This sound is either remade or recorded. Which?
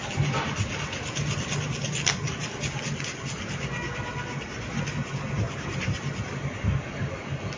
recorded